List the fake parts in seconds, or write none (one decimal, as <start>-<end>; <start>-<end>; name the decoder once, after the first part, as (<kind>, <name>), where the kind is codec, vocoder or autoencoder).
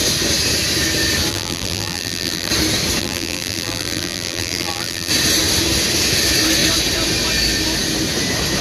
1.3-2.5 (vocoder, BigVGAN v2); 3.0-5.1